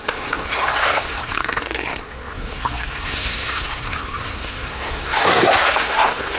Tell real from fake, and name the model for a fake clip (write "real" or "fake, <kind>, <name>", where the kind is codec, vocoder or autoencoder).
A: fake, codec, SNAC